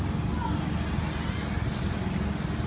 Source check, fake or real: real